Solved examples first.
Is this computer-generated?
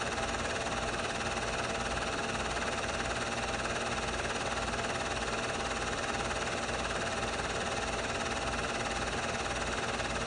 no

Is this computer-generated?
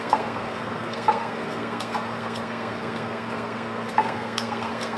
yes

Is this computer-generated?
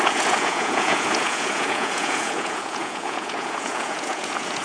yes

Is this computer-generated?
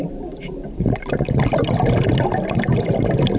no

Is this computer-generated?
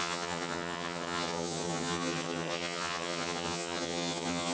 yes